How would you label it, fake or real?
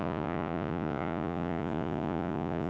fake